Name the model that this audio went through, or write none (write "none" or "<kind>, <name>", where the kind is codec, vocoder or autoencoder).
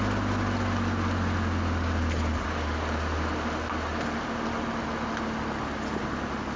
none